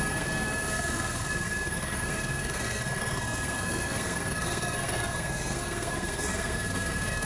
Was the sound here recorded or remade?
remade